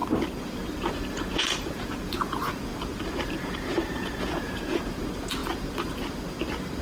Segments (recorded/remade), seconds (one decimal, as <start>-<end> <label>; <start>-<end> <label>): 0.0-0.9 recorded; 0.9-2.7 remade; 2.7-3.4 recorded; 3.4-5.4 remade; 5.4-6.8 recorded